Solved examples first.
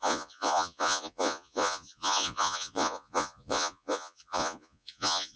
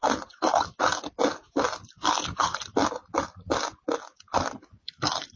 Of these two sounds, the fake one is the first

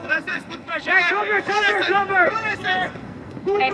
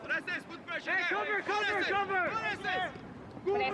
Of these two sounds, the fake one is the first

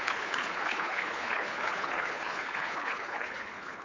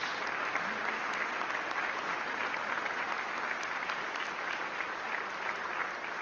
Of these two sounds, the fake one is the first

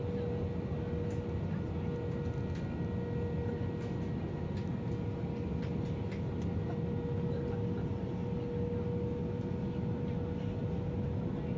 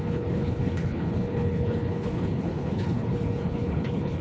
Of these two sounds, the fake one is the second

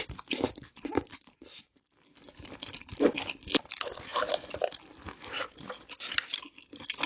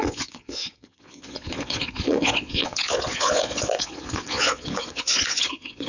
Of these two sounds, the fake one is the second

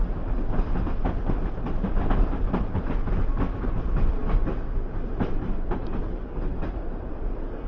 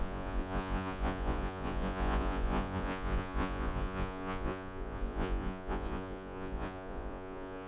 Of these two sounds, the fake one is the second